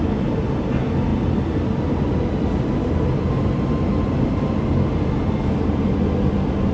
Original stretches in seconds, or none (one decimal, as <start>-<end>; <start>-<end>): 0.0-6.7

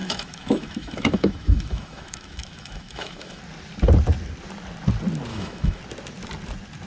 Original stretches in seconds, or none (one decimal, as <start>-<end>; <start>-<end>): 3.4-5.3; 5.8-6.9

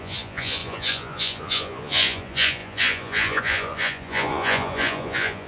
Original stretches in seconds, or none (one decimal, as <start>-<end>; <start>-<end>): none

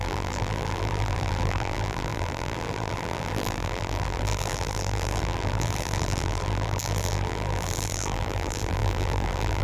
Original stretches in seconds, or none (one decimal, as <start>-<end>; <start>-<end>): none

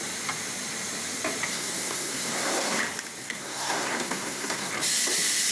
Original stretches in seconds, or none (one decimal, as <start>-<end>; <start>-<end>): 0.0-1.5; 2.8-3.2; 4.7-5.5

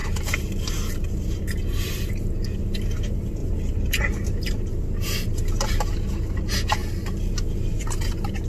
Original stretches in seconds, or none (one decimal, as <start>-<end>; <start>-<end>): 3.4-4.3

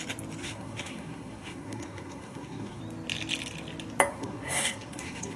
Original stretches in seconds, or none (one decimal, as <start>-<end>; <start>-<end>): 0.0-0.4; 2.8-4.1